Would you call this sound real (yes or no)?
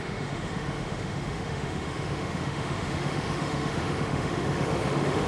no